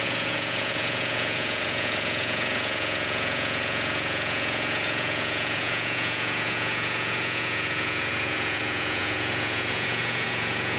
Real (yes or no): no